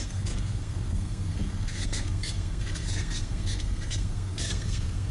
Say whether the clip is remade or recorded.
remade